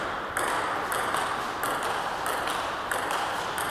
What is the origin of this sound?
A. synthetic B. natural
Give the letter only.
B